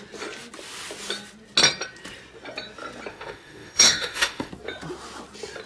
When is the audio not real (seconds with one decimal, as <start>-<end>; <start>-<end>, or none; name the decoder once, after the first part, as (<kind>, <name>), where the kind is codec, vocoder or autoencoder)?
3.1-4.5 (autoencoder, DAC-VAE)